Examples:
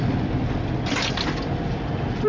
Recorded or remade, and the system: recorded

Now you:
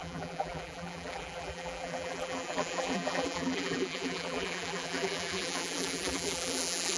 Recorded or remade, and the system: remade, vocoder, BigVGAN v2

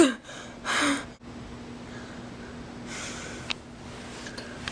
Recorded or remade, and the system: recorded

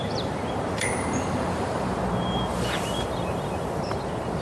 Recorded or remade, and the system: remade, vocoder, BigVGAN v2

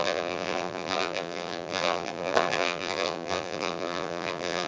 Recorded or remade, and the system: remade, vocoder, BigVGAN v2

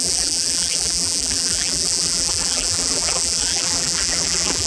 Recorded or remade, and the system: remade, vocoder, BigVGAN v2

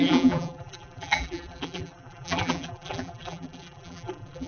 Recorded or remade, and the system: remade, vocoder, BigVGAN v2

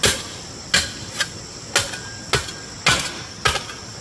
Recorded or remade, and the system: recorded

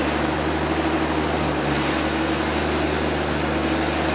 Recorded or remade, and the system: recorded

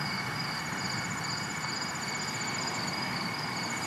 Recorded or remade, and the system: recorded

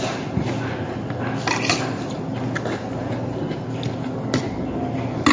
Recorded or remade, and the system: recorded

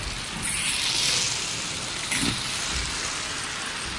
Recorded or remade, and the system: recorded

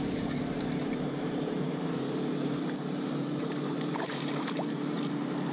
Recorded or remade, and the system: remade, vocoder, BigVGAN v2